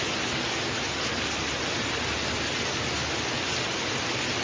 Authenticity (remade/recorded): recorded